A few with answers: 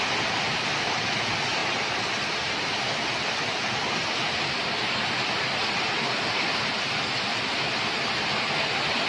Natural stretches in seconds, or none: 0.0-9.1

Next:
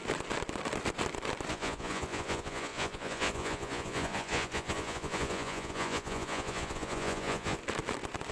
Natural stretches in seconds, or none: 0.0-1.5; 7.6-8.3